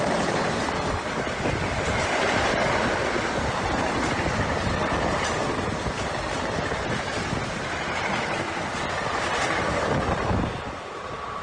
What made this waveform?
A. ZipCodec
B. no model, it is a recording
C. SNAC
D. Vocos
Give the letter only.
B